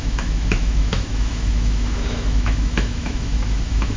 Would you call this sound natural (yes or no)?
no